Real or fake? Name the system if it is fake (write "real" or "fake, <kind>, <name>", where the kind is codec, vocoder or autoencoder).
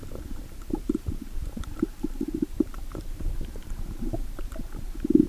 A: fake, vocoder, BigVGAN v2